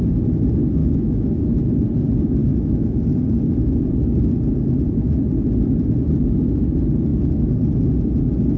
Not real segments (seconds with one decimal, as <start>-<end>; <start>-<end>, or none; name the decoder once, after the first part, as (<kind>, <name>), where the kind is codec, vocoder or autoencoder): 0.8-1.4 (autoencoder, DAC-VAE); 2.4-3.0